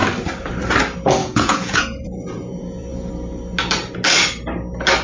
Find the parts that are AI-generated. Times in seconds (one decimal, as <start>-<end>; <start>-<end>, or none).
1.2-3.1